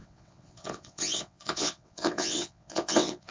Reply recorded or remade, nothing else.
remade